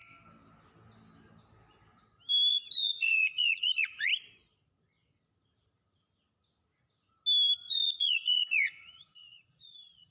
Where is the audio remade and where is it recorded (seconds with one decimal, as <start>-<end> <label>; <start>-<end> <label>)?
0.0-2.5 recorded; 2.5-4.1 remade; 4.1-7.7 recorded; 7.7-10.1 remade